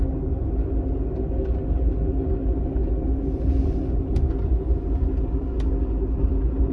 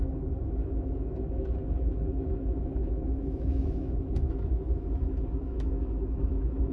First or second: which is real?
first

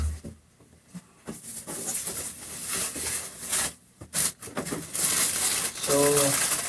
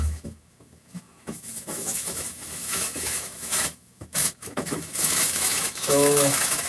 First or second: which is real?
first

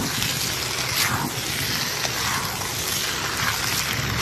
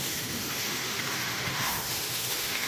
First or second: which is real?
first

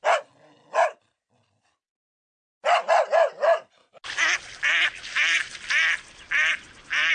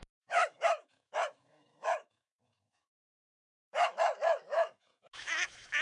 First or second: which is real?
first